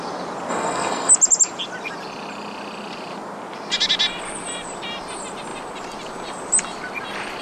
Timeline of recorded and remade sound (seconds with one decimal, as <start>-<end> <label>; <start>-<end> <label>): 0.0-0.5 recorded; 0.5-1.1 remade; 1.1-7.4 recorded